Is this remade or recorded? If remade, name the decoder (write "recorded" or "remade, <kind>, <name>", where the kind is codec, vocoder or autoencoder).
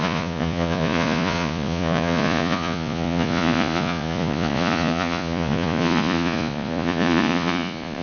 remade, vocoder, Vocos